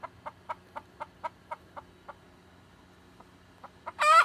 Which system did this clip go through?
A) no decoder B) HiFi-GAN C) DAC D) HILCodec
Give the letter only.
A